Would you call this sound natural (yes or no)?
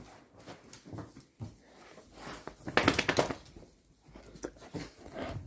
yes